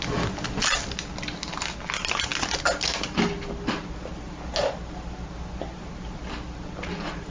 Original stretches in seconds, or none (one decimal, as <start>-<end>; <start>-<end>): 0.0-7.3